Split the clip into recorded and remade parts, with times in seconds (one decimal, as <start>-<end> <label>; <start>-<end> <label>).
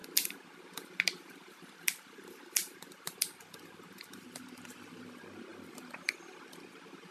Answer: 0.0-4.3 remade; 4.3-5.5 recorded; 5.5-6.3 remade; 6.3-7.1 recorded